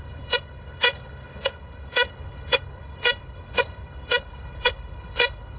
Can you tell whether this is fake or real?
fake